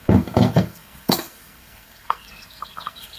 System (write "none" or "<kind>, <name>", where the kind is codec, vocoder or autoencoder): codec, SNAC